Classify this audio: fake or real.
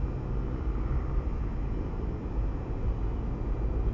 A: real